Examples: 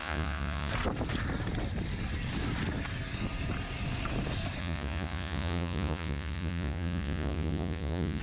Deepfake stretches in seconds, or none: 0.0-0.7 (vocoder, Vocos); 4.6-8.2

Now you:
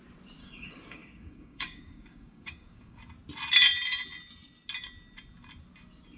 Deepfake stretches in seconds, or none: 0.4-3.0 (codec, DAC)

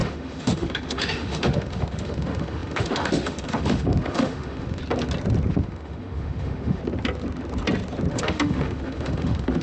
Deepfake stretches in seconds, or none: 0.0-4.8 (autoencoder, DAC-VAE); 5.5-6.8; 8.1-9.6

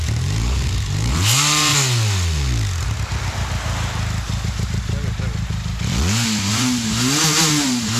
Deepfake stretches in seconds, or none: 0.0-1.7 (vocoder, BigVGAN v2); 6.5-8.0

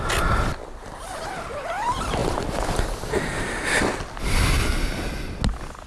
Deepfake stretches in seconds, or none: none

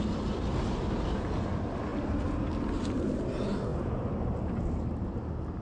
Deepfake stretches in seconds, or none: 3.7-4.6 (vocoder, BigVGAN v2)

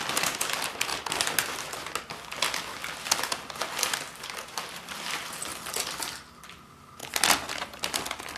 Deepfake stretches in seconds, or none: none

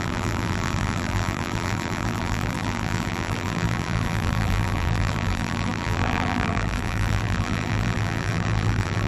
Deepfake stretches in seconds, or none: 0.0-9.1 (vocoder, BigVGAN v2)